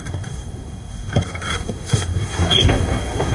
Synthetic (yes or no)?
yes